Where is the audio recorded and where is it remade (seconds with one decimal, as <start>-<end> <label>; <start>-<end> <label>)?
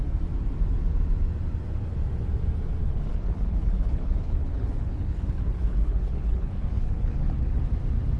0.0-2.8 recorded; 2.8-7.6 remade; 7.6-8.2 recorded